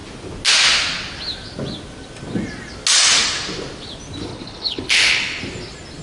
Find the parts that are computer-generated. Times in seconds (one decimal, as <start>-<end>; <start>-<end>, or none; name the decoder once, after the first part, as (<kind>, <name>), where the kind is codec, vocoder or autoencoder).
4.3-5.4 (codec, HILCodec)